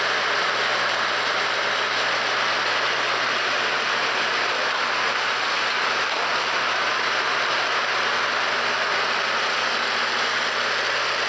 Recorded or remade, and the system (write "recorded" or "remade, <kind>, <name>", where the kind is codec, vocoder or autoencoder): recorded